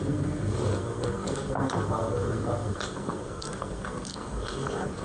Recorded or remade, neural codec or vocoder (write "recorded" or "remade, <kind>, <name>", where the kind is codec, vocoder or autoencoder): remade, codec, SNAC